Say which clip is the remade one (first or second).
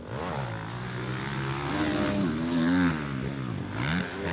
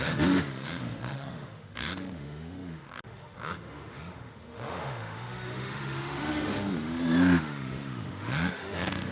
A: second